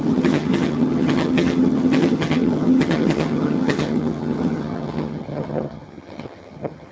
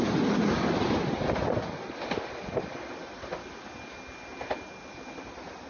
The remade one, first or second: first